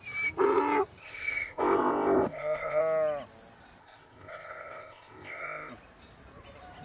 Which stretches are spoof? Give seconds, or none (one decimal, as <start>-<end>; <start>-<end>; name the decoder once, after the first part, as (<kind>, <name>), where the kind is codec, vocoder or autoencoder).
1.0-2.8 (codec, ZipCodec); 3.8-5.7